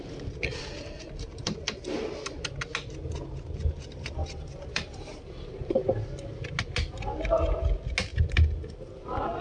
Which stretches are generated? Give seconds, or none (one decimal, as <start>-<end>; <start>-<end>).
4.2-5.6